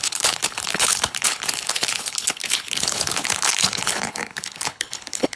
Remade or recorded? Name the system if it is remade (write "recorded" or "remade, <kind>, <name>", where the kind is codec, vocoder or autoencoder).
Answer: remade, codec, HILCodec